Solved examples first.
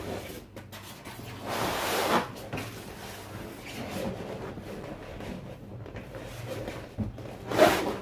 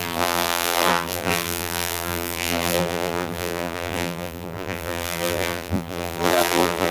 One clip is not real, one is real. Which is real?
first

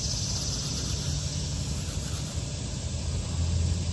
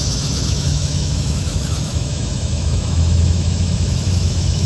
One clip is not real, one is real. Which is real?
first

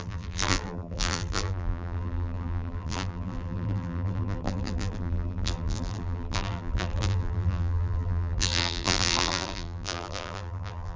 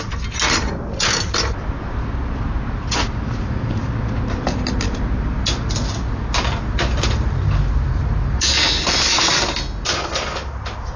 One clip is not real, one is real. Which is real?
second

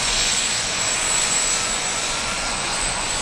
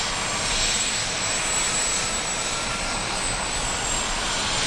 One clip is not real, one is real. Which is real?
second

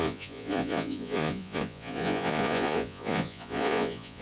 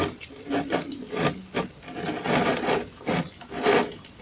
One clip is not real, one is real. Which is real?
second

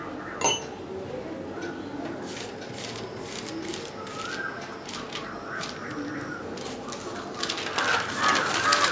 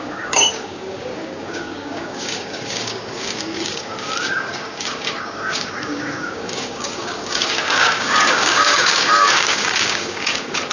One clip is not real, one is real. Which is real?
first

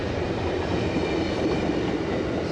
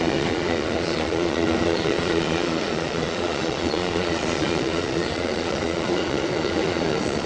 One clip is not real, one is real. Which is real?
first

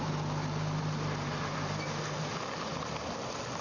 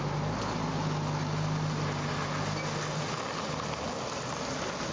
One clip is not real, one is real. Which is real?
second